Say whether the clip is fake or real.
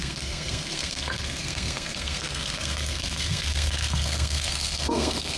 fake